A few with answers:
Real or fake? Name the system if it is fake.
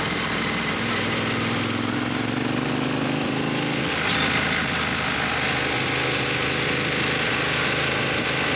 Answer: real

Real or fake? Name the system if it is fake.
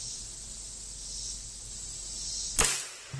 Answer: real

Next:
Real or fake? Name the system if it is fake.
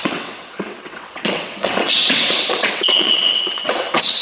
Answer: fake, vocoder, WaveNeXt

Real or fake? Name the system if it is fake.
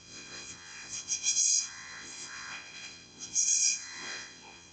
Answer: fake, vocoder, WaveNeXt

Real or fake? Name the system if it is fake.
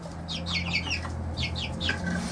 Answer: real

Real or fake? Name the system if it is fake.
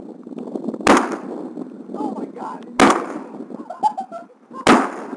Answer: real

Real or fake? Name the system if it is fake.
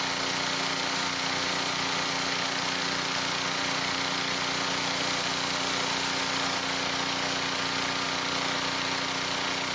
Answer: real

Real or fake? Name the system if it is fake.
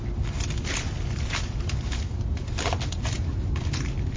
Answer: real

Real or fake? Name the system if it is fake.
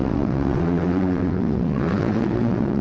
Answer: fake, vocoder, WaveNeXt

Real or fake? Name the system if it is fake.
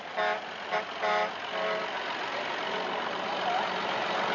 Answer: real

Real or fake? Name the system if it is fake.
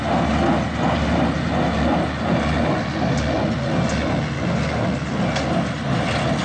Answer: real